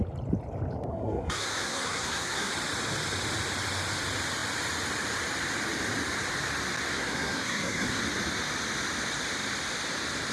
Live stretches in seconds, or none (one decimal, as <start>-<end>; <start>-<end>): 0.0-0.9; 2.5-6.9; 8.0-10.3